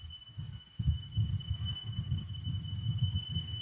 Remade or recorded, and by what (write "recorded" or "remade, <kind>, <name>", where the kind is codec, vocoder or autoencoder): remade, codec, DAC